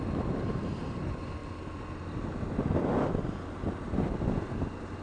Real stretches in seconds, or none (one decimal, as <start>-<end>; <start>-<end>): 0.0-5.0